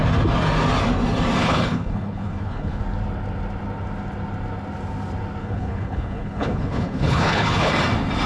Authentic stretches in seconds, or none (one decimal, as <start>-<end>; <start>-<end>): 0.0-1.4; 2.8-5.4; 7.7-8.3